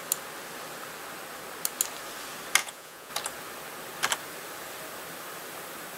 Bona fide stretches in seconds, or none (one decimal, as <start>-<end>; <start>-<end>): 0.0-2.6; 3.1-6.0